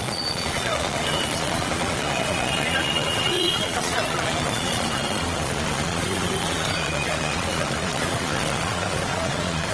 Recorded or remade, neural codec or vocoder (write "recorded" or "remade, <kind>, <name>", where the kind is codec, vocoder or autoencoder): remade, vocoder, Vocos